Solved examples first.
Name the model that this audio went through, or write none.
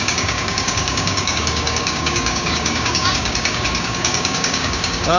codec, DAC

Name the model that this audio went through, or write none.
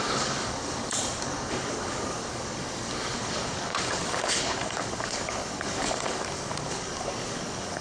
codec, DAC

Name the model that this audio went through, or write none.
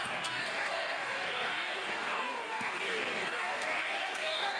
codec, DAC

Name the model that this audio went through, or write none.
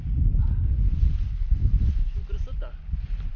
none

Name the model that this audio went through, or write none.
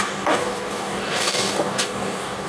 codec, DAC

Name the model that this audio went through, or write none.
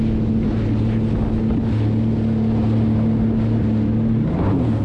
none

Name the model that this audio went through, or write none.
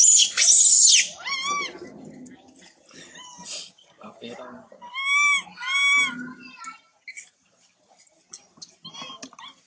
none